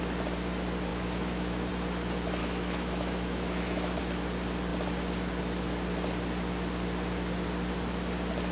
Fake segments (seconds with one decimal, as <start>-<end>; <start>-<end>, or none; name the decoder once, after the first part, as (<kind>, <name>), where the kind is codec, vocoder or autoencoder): 0.9-1.7 (autoencoder, DAC-VAE); 2.4-4.0